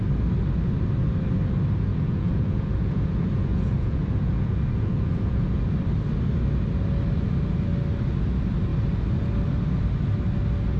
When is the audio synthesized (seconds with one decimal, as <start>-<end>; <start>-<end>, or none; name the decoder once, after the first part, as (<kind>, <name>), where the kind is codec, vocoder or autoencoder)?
1.9-5.6 (vocoder, Vocos)